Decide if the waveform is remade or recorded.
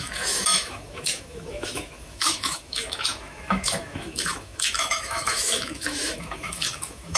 remade